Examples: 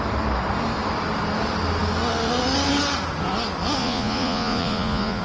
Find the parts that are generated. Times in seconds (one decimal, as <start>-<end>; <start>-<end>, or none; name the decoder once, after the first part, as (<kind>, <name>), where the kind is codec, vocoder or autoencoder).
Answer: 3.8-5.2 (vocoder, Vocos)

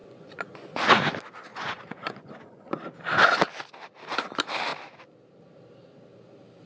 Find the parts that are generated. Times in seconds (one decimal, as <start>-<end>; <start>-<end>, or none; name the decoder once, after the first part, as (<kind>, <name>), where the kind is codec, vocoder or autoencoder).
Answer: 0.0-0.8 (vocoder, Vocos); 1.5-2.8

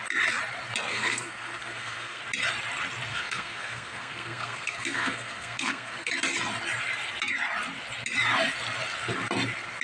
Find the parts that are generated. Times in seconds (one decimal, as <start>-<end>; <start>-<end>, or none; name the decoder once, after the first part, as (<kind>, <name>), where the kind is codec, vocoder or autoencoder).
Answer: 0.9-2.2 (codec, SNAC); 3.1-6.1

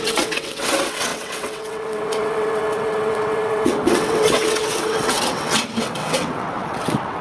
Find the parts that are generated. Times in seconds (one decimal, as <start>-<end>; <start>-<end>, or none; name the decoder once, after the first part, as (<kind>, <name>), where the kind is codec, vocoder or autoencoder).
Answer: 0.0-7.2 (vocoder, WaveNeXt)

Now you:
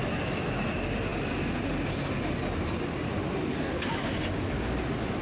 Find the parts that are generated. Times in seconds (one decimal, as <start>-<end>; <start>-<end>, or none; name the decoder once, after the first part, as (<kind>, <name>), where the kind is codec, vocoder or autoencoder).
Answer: none

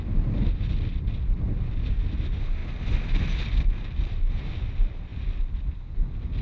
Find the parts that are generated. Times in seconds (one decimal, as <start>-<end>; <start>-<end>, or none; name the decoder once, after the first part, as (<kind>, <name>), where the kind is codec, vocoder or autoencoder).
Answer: none